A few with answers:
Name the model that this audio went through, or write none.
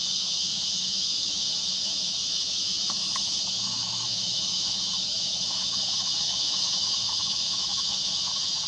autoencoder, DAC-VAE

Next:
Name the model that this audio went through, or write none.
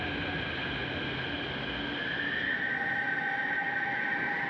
none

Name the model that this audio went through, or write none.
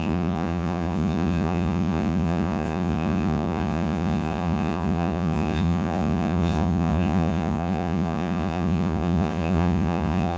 vocoder, Vocos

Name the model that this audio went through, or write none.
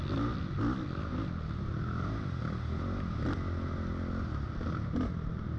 none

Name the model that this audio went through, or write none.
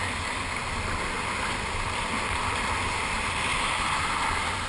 none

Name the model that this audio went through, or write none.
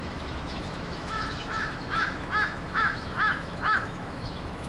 autoencoder, DAC-VAE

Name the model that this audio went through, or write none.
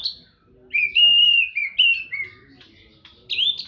none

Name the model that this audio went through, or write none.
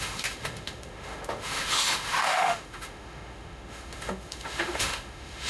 autoencoder, DAC-VAE